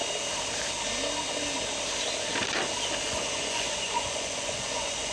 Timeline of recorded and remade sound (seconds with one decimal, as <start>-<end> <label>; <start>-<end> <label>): 0.0-3.1 recorded; 3.1-5.1 remade

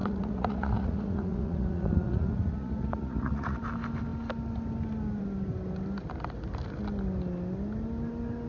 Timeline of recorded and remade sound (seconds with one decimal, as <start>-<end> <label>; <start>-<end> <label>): 0.0-3.6 remade; 3.6-8.5 recorded